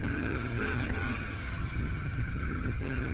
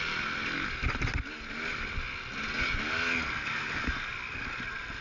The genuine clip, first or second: second